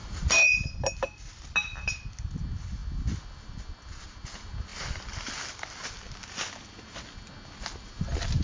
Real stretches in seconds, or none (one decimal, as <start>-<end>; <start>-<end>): 0.0-8.4